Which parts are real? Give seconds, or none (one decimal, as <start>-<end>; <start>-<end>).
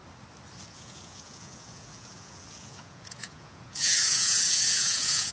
0.0-0.7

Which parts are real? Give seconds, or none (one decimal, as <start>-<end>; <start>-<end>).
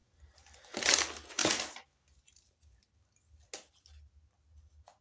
0.0-5.0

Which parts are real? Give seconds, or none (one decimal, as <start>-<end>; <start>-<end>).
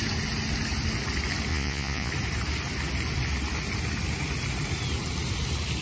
0.0-1.5; 2.1-5.8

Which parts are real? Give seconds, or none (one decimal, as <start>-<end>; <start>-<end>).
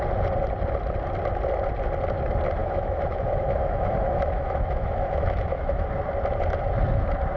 0.0-2.6; 5.9-7.4